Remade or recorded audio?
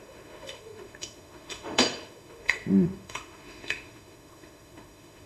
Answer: remade